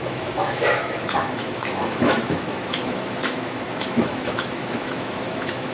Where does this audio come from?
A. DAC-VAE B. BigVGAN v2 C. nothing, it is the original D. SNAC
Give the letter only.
A